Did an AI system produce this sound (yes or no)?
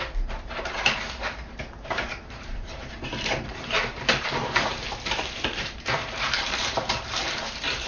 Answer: yes